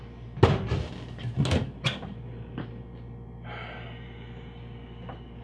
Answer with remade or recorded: recorded